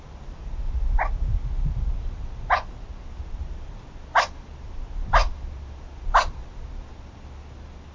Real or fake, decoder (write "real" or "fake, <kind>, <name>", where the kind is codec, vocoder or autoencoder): real